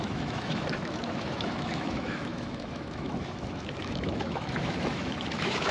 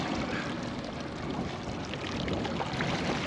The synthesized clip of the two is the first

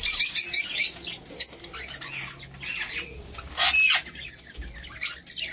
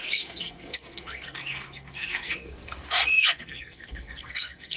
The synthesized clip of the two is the second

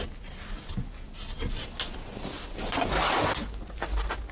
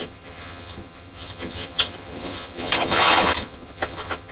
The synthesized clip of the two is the second